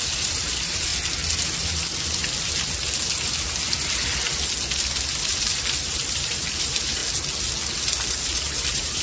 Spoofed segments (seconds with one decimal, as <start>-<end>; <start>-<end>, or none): 0.0-0.9; 5.2-7.0; 8.1-9.0